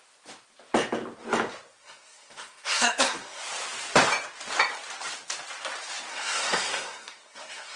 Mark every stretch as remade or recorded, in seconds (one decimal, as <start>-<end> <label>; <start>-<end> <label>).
0.0-1.8 recorded; 1.8-3.4 remade; 3.4-6.1 recorded; 6.1-7.8 remade

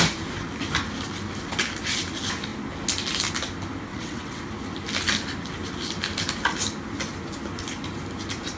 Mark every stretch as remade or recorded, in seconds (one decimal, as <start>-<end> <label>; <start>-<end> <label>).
0.0-3.9 recorded; 3.9-4.4 remade; 4.4-8.6 recorded

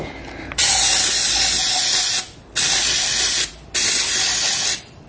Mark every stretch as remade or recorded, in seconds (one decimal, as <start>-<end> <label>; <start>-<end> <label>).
0.0-5.1 recorded

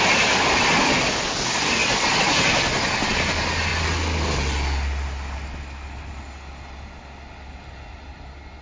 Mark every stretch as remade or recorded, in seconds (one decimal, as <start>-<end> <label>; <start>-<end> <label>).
0.0-8.6 recorded

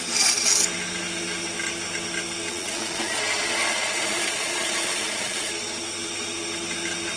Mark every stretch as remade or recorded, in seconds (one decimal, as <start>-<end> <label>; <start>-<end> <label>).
0.0-2.5 recorded; 2.5-3.2 remade; 3.2-3.7 recorded; 3.7-5.5 remade; 5.5-7.2 recorded